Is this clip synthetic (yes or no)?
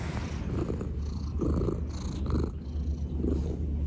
no